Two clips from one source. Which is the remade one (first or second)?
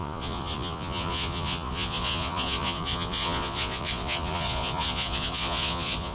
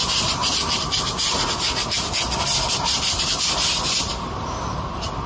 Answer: first